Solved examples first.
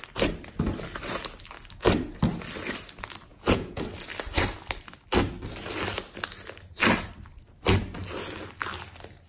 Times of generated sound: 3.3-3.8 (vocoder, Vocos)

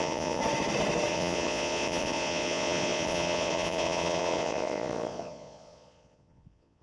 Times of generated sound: 0.0-0.4 (vocoder, Vocos); 1.1-6.8

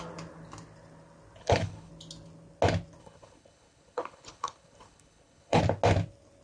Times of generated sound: 1.4-1.9 (codec, HILCodec); 3.0-5.6

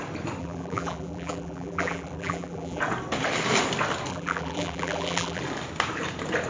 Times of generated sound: 0.4-2.8 (vocoder, BigVGAN v2); 4.1-5.4

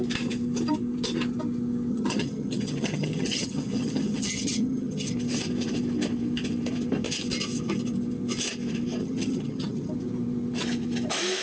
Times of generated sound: 1.9-5.1 (vocoder, HiFi-GAN); 9.0-9.9

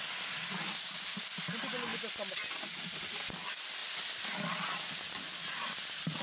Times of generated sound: none